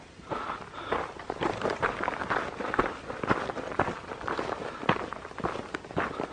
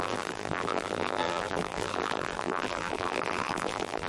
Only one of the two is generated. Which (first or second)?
second